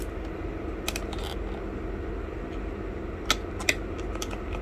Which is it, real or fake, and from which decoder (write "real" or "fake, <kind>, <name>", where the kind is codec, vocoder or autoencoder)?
real